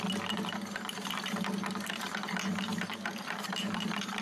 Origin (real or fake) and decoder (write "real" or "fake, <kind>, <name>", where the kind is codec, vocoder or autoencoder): real